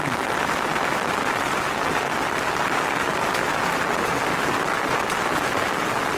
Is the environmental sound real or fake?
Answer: real